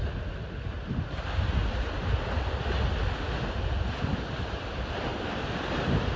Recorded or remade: recorded